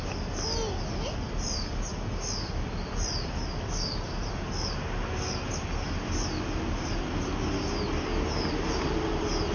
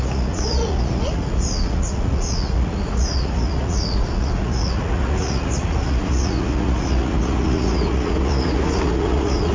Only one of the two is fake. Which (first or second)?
second